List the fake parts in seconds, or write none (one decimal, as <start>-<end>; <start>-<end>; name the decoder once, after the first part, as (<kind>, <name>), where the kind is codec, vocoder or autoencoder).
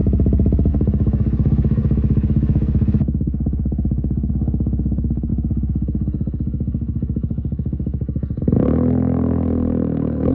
0.7-10.3 (codec, SNAC)